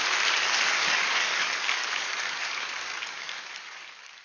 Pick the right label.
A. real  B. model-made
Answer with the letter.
B